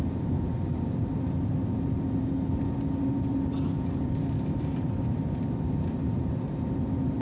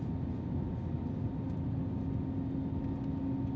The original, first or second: second